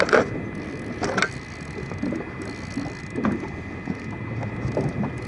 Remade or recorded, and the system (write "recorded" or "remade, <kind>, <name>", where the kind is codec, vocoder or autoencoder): recorded